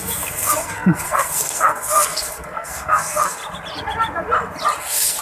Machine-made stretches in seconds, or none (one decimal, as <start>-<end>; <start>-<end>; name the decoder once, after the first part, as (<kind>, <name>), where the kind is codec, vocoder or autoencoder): 0.0-3.4 (codec, SNAC); 4.8-5.2